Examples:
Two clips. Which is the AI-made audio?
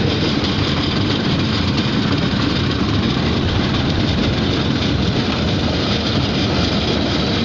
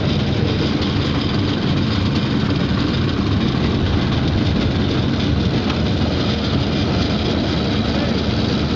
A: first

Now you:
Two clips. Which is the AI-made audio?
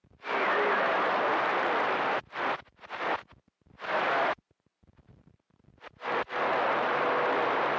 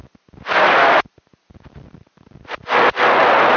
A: first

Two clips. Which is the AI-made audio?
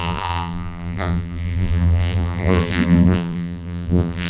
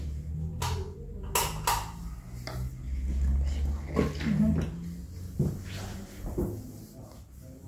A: first